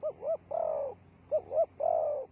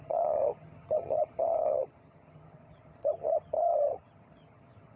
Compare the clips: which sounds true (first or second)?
first